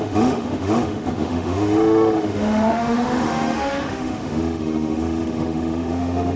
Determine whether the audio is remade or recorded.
remade